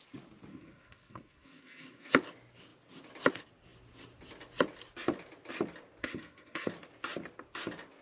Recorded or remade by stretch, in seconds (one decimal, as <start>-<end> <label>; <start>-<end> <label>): 0.0-0.5 recorded; 0.5-2.1 remade; 2.1-6.0 recorded; 6.0-6.7 remade; 6.7-8.0 recorded